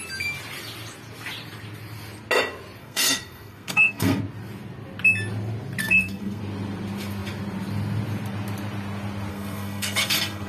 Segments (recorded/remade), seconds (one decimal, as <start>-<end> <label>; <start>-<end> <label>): 0.0-2.8 recorded; 2.8-4.2 remade; 4.2-5.8 recorded; 5.8-6.4 remade; 6.4-9.3 recorded; 9.3-10.5 remade